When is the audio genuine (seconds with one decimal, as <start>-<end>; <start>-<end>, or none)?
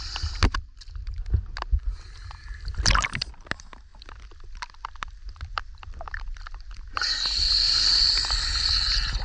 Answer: 0.0-3.9; 6.9-9.2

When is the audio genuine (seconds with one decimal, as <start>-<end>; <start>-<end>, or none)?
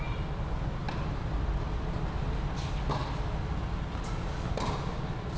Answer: 0.0-5.4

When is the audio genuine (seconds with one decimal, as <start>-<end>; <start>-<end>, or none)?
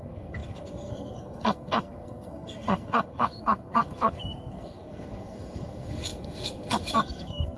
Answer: none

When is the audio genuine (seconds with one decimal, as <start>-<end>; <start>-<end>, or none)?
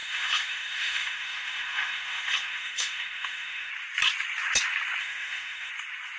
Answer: 3.7-5.0; 5.7-6.2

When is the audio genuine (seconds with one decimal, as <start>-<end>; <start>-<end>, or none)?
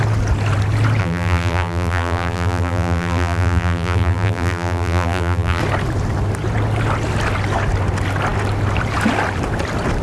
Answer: 0.0-1.0; 5.6-10.0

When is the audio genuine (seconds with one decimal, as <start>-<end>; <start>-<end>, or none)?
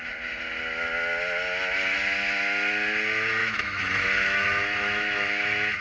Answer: 0.0-3.4